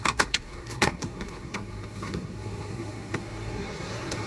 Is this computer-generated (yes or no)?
yes